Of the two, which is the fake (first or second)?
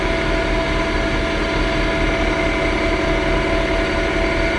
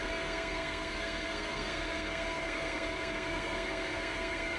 second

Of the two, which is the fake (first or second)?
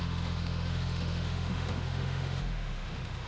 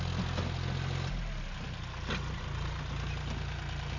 first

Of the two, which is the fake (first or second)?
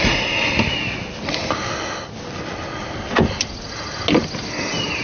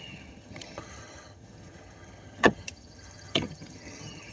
second